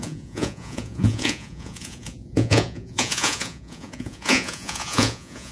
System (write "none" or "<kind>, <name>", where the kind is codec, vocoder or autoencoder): vocoder, Vocos